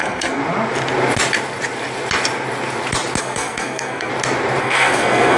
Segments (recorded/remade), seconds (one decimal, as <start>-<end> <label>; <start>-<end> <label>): 0.0-0.4 remade; 0.4-3.2 recorded; 3.2-4.1 remade; 4.1-4.6 recorded; 4.6-5.4 remade